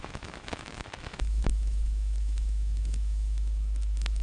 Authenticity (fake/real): fake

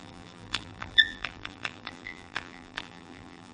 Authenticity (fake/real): fake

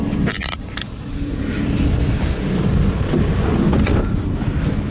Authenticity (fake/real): real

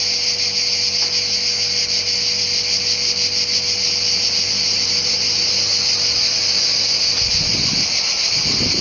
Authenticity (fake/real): real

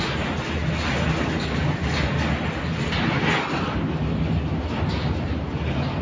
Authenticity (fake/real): real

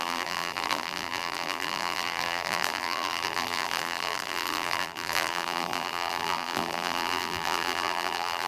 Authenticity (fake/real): fake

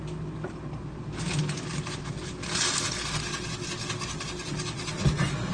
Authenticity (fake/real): real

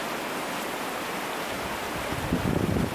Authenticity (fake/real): real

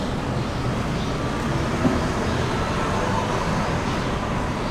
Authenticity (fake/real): real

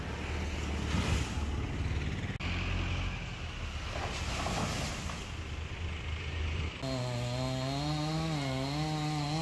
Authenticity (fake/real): real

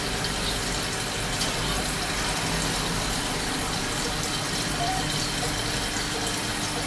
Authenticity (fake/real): real